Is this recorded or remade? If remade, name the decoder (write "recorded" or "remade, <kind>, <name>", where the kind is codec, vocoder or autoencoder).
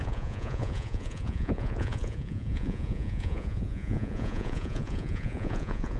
remade, vocoder, Vocos